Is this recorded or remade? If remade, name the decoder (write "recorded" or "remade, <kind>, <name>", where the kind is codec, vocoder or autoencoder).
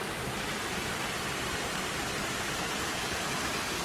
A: recorded